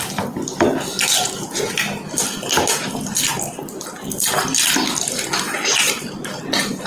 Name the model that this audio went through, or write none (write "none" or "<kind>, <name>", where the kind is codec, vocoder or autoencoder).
none